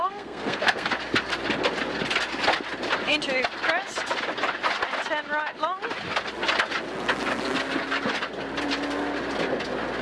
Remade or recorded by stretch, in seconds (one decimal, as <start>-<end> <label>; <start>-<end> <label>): 0.0-0.9 remade; 0.9-10.0 recorded